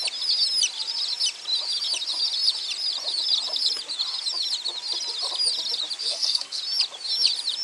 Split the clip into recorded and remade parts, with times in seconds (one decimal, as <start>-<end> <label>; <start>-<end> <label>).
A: 0.0-6.0 recorded; 6.0-6.6 remade; 6.6-7.6 recorded